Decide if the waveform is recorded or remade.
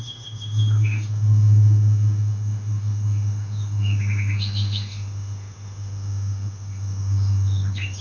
remade